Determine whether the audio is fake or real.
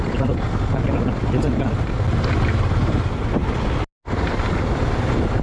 real